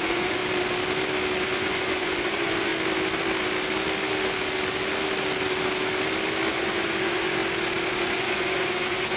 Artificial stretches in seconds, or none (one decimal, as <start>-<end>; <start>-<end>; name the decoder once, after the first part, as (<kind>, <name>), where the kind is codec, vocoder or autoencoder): 0.0-0.4 (vocoder, Vocos); 1.4-2.7; 6.5-7.4; 7.9-9.2